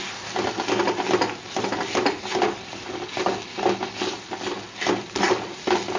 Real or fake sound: real